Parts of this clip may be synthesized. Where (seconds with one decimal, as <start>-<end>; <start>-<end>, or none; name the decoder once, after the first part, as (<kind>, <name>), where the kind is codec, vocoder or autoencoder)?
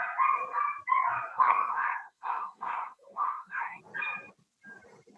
1.3-3.8 (codec, SNAC)